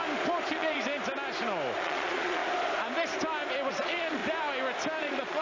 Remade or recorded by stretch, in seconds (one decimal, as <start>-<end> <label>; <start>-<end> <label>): 0.0-0.5 recorded; 0.5-0.9 remade; 0.9-1.8 recorded; 1.8-2.4 remade; 2.4-3.7 recorded; 3.7-4.2 remade; 4.2-5.0 recorded; 5.0-5.4 remade